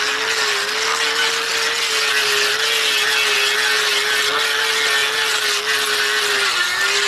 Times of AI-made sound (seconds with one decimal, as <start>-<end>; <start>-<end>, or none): none